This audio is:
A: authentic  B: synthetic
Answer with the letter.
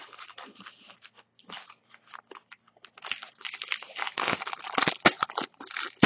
A